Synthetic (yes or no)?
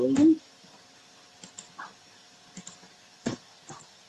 no